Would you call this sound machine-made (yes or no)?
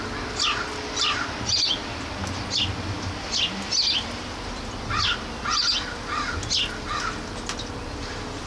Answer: no